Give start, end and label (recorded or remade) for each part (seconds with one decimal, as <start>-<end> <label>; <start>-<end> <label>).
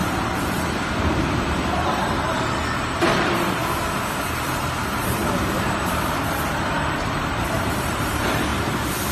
0.0-3.6 remade; 3.6-4.2 recorded; 4.2-8.5 remade; 8.5-9.1 recorded